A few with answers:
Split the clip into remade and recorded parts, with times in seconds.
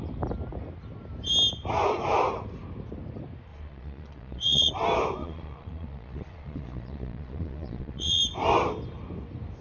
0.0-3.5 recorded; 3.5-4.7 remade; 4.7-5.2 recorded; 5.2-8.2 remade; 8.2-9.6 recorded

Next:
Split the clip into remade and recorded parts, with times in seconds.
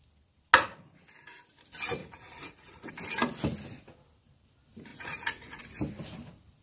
0.0-2.0 recorded; 2.0-2.9 remade; 2.9-4.9 recorded; 4.9-5.6 remade; 5.6-6.6 recorded